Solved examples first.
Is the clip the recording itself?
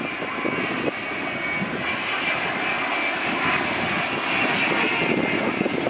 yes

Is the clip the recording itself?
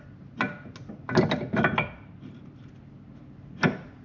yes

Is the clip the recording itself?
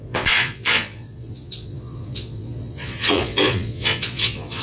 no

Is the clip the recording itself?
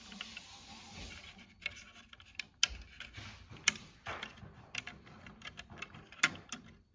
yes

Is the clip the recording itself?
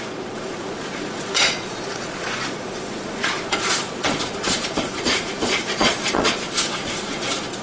no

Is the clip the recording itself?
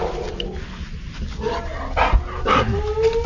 yes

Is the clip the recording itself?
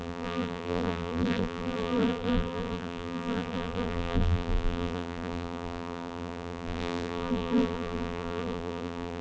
no